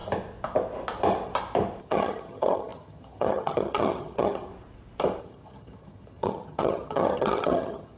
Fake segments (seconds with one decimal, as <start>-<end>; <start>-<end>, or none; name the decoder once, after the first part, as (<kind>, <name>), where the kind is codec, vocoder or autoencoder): 1.8-4.5 (vocoder, HiFi-GAN); 5.2-8.0